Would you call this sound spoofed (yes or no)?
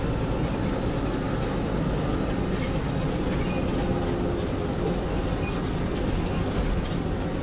no